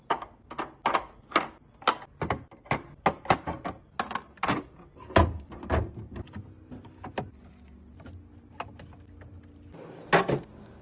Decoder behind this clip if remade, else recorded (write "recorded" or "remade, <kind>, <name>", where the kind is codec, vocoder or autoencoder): recorded